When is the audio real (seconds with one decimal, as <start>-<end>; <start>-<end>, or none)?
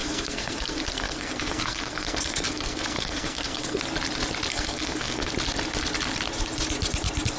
3.8-4.5; 5.3-7.4